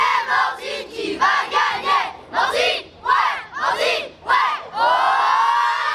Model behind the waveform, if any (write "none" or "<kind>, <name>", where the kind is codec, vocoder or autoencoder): none